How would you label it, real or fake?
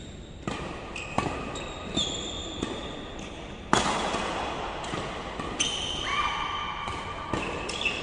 real